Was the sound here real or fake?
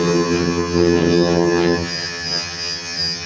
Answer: fake